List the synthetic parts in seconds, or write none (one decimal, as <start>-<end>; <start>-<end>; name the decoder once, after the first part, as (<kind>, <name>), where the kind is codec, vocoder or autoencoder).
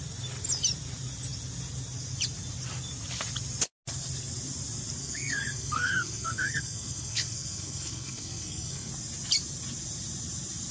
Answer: 5.0-8.9 (codec, SNAC)